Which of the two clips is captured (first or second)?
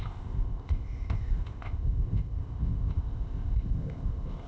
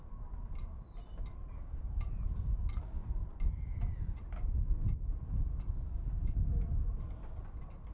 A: second